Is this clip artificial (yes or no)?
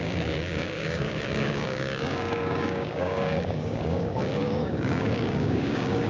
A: yes